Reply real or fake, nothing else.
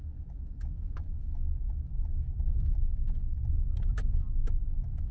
fake